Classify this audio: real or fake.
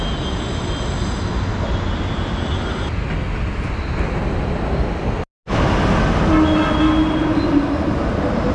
real